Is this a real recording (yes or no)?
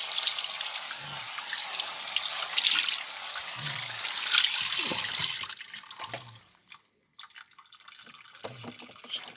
yes